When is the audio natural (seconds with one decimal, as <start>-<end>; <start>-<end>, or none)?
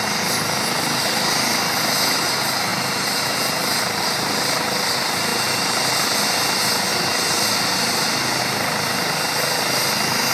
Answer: 0.0-2.7; 4.0-5.3; 5.9-6.9; 8.4-10.3